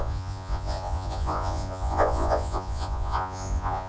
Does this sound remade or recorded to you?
remade